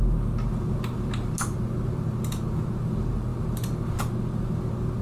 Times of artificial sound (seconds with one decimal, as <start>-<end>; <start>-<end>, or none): none